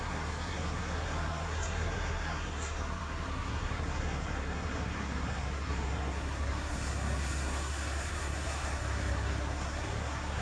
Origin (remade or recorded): remade